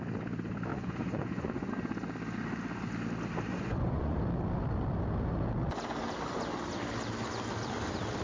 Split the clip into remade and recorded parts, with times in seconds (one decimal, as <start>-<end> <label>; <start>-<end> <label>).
0.0-0.7 recorded; 0.7-1.7 remade; 1.7-3.5 recorded; 3.5-4.2 remade; 4.2-8.2 recorded